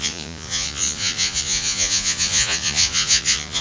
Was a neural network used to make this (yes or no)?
yes